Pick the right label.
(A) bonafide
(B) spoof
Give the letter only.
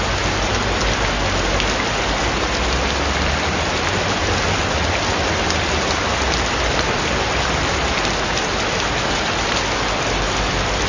A